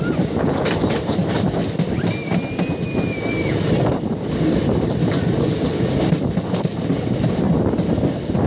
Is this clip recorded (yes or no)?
yes